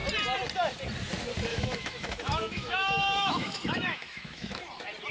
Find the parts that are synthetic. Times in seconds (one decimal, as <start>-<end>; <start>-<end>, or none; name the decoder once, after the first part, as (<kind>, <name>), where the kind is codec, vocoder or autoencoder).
1.5-4.6 (autoencoder, DAC-VAE)